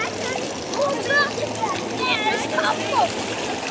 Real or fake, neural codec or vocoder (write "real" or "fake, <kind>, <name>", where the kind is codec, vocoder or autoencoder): real